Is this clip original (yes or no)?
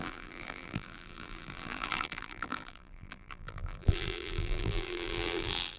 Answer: no